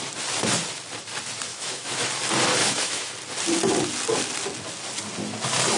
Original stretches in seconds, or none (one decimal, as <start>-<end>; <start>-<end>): 0.0-1.5; 2.1-2.6; 3.1-5.8